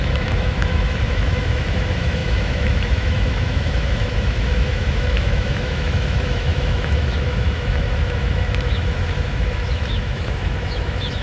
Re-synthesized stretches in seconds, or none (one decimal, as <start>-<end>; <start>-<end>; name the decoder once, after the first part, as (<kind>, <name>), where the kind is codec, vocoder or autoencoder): 0.0-11.2 (autoencoder, DAC-VAE)